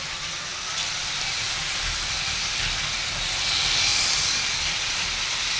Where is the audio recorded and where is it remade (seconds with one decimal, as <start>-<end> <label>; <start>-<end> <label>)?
0.0-0.5 recorded; 0.5-2.5 remade; 2.5-3.9 recorded; 3.9-4.7 remade; 4.7-5.6 recorded